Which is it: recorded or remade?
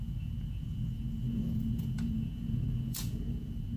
remade